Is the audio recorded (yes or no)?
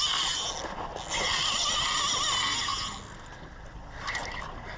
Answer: yes